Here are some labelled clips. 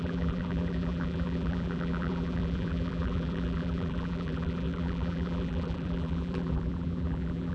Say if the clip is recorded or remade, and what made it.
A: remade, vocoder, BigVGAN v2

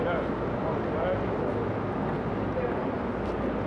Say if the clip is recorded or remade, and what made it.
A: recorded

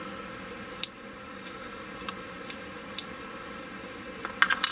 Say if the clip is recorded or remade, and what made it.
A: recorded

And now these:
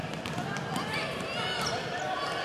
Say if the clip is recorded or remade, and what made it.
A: recorded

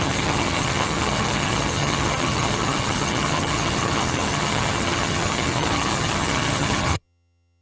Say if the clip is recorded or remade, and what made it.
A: remade, vocoder, HiFi-GAN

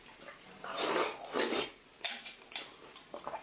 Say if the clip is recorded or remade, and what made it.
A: recorded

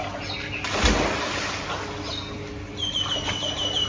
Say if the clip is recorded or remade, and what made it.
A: recorded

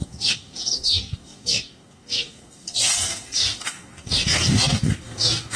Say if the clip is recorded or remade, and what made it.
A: remade, codec, DAC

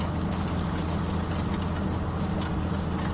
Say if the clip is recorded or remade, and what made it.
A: recorded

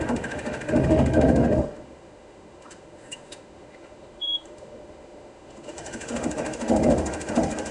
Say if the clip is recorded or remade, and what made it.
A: remade, autoencoder, DAC-VAE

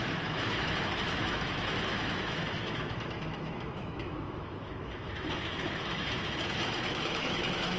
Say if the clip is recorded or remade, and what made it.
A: remade, autoencoder, DAC-VAE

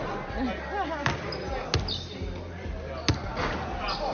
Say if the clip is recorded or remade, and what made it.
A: recorded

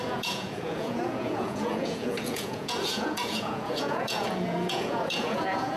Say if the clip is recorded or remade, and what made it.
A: remade, vocoder, Vocos